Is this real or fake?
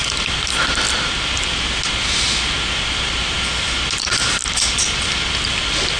real